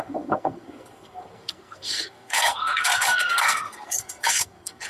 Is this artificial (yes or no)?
yes